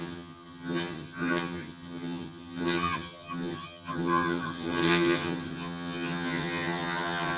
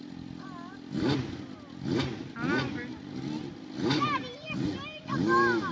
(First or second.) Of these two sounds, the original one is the second